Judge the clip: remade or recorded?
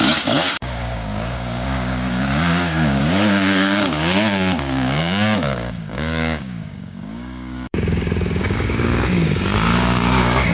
remade